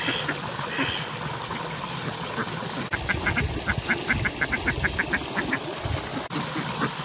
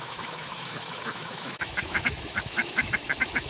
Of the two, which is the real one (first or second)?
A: first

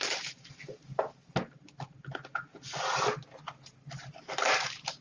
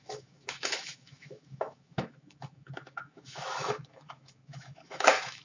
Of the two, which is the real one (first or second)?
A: first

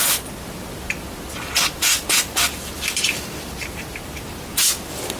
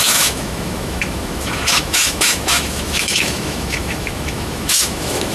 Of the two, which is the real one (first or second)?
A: first